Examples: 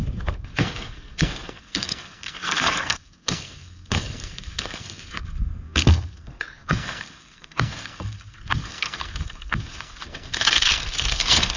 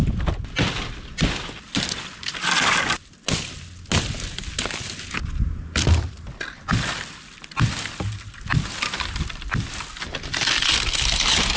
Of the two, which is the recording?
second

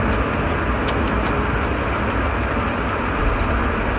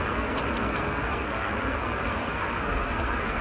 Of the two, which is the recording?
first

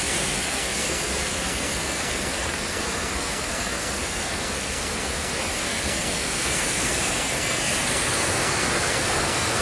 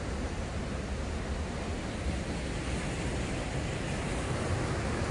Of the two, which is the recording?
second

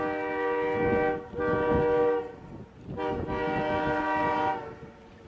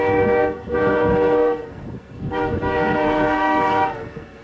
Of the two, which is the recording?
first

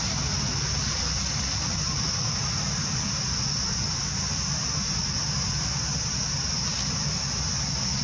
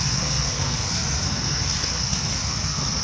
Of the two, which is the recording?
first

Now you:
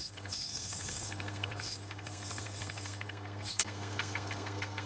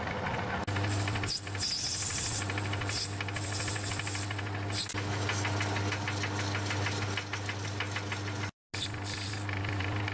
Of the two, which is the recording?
second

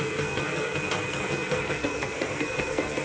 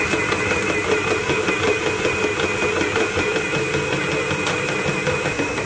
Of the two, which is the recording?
second